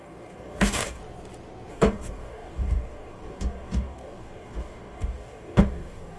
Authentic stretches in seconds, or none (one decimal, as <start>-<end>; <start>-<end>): 1.0-1.7